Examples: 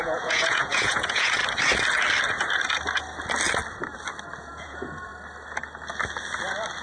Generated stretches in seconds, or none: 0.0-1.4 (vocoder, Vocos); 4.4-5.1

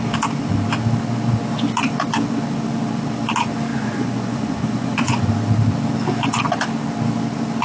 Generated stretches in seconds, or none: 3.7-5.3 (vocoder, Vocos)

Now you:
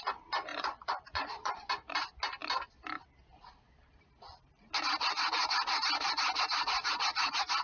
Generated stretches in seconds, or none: 0.5-1.7 (vocoder, Vocos)

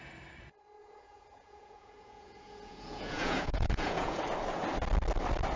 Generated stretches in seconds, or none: 0.8-4.2 (vocoder, Vocos)

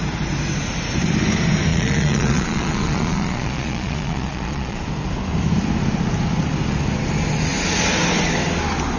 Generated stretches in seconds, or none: 1.7-4.8 (vocoder, Vocos)